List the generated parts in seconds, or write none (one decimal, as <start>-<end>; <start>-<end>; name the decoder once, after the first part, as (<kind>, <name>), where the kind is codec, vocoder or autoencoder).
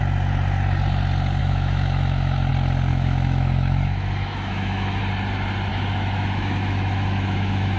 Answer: 1.4-2.5 (autoencoder, DAC-VAE); 2.9-5.0; 5.7-7.8